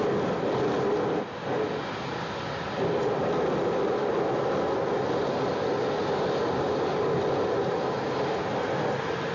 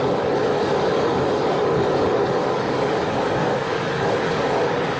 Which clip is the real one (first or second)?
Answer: first